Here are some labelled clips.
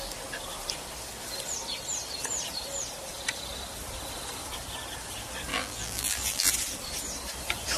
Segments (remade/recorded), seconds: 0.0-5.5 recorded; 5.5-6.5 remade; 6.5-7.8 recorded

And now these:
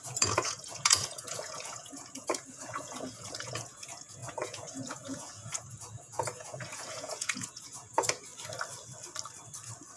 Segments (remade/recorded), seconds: 0.0-8.3 remade; 8.3-10.0 recorded

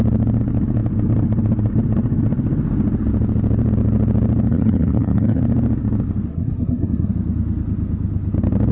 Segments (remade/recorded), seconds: 0.0-4.5 recorded; 4.5-5.4 remade; 5.4-6.3 recorded; 6.3-7.1 remade; 7.1-8.7 recorded

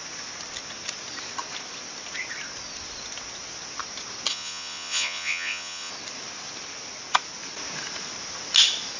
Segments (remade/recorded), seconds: 0.0-4.3 recorded; 4.3-5.9 remade; 5.9-9.0 recorded

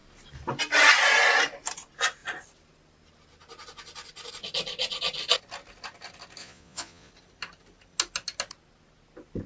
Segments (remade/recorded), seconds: 0.0-6.4 recorded; 6.4-7.1 remade; 7.1-9.5 recorded

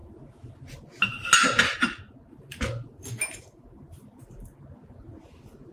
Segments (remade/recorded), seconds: 0.0-5.7 recorded